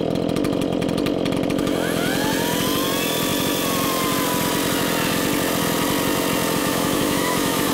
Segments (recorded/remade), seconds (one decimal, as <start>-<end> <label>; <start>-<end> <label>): 0.0-6.6 recorded; 6.6-7.7 remade